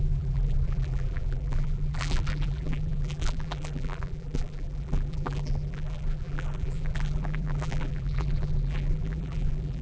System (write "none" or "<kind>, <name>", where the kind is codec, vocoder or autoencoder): vocoder, BigVGAN v2